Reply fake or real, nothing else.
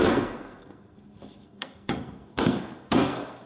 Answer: fake